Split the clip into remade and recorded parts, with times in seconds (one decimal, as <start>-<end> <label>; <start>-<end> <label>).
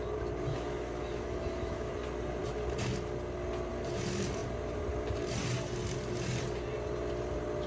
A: 0.0-0.5 recorded; 0.5-1.9 remade; 1.9-7.7 recorded